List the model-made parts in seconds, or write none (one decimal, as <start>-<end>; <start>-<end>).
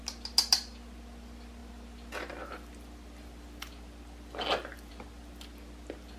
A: none